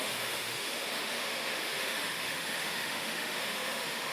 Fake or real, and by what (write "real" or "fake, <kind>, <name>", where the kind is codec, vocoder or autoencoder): fake, autoencoder, DAC-VAE